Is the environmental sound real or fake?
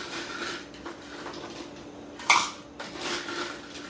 real